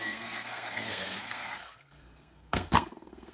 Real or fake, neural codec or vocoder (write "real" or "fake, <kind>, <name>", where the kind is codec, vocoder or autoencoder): fake, codec, SNAC